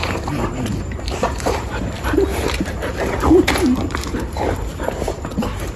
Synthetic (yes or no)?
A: yes